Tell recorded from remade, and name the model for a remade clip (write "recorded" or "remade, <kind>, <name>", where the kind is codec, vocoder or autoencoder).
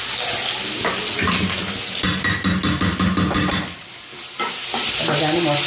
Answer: recorded